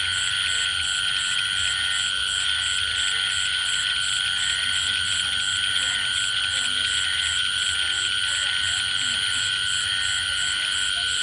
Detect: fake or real real